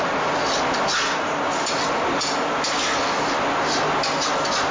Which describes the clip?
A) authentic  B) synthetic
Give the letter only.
A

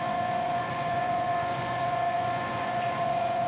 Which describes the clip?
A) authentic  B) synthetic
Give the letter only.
B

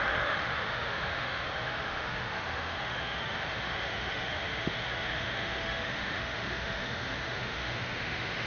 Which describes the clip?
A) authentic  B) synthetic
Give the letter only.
B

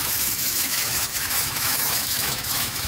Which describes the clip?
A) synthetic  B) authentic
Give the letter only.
A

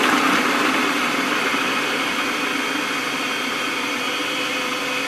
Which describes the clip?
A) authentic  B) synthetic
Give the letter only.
B